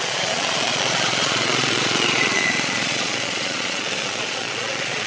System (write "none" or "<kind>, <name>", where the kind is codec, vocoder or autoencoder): vocoder, Vocos